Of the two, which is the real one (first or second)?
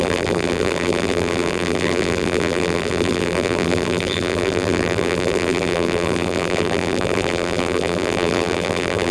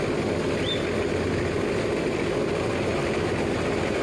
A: second